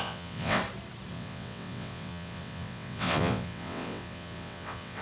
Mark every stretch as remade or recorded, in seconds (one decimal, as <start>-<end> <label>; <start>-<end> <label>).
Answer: 0.0-0.6 remade; 0.6-1.1 recorded; 1.1-5.0 remade